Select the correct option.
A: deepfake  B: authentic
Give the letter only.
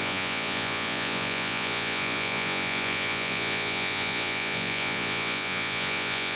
A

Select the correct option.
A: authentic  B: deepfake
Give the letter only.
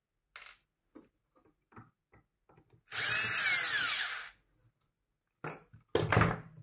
A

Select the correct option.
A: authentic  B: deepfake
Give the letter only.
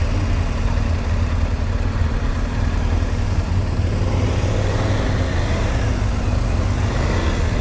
A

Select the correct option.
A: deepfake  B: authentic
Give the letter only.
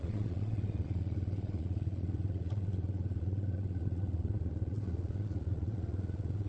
A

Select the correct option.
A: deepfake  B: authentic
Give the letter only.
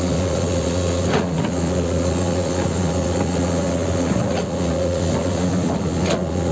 A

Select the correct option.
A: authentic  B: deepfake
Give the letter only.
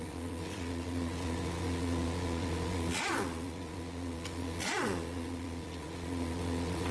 B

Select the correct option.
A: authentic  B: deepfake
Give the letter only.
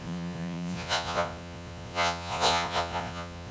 B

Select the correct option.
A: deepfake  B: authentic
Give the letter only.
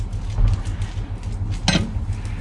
B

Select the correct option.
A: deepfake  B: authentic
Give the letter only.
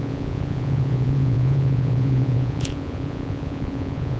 A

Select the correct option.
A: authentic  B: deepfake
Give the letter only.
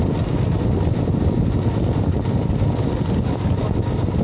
A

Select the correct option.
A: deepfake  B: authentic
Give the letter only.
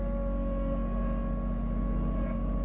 B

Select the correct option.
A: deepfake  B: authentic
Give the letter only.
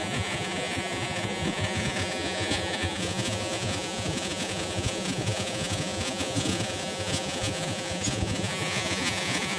A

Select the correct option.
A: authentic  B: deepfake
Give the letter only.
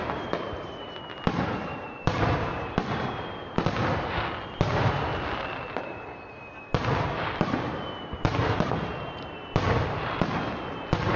A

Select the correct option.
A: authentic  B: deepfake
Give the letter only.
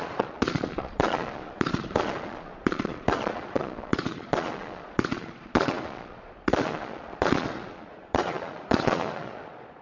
B